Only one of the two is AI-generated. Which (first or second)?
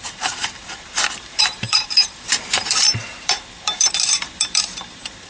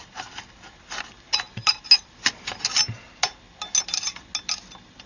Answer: first